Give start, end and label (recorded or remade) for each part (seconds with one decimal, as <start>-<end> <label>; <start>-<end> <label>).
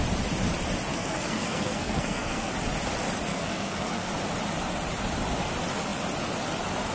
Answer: 0.0-0.9 recorded; 0.9-2.5 remade; 2.5-3.3 recorded; 3.3-4.1 remade; 4.1-6.9 recorded